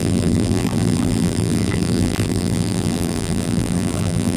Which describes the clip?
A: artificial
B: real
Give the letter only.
A